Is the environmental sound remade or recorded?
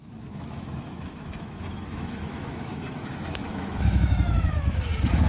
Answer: remade